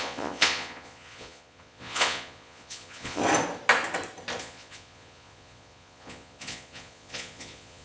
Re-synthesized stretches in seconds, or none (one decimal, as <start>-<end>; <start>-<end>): 0.0-3.2; 4.4-7.8